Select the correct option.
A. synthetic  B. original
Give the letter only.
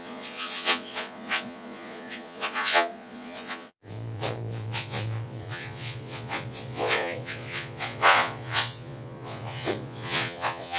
A